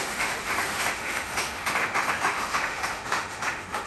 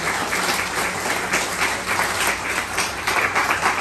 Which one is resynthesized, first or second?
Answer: first